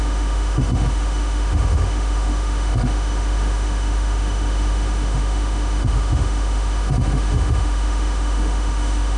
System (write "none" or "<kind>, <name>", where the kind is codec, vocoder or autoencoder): autoencoder, DAC-VAE